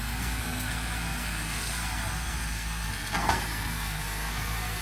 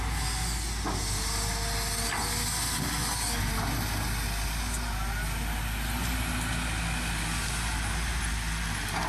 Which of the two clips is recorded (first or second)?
second